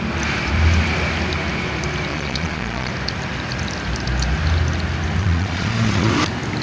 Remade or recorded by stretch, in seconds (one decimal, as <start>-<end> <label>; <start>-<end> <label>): 0.0-2.1 recorded; 2.1-2.9 remade; 2.9-5.2 recorded; 5.2-6.1 remade; 6.1-6.6 recorded